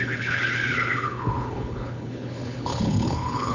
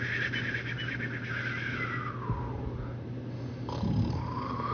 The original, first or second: second